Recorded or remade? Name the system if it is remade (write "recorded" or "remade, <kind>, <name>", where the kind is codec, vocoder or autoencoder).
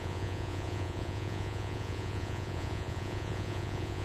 remade, vocoder, Vocos